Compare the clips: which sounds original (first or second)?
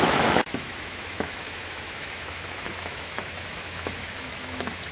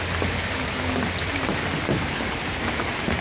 second